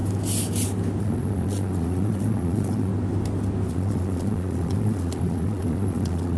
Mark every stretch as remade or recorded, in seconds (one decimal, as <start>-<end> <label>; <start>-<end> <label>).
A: 0.0-1.0 recorded; 1.0-2.9 remade; 2.9-3.7 recorded; 3.7-6.4 remade